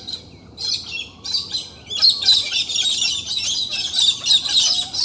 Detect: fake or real real